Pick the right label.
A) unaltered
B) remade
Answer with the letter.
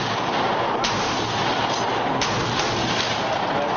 A